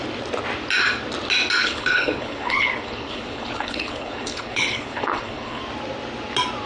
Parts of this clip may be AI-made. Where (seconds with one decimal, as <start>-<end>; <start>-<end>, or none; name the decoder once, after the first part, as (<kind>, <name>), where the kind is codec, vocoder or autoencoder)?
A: 1.6-5.6 (codec, HILCodec)